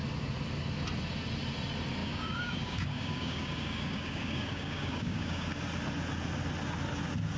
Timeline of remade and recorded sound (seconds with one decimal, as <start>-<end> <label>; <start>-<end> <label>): 0.0-2.0 recorded; 2.0-5.5 remade; 5.5-7.4 recorded

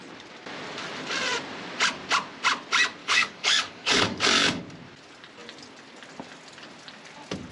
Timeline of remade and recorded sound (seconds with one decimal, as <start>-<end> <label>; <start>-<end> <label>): 0.0-3.0 recorded; 3.0-4.6 remade; 4.6-7.5 recorded

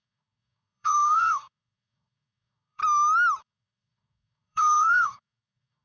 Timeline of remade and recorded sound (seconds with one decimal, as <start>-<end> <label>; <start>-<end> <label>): 0.0-2.8 remade; 2.8-3.4 recorded; 3.4-5.8 remade

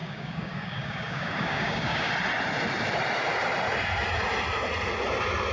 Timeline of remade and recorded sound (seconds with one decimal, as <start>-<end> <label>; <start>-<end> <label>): 0.0-2.1 remade; 2.1-5.5 recorded

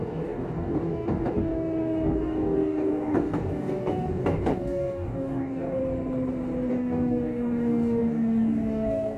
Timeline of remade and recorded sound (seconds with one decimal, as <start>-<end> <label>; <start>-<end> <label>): 0.0-5.8 remade; 5.8-6.7 recorded; 6.7-9.2 remade